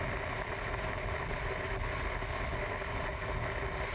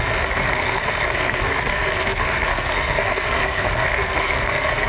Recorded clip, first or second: first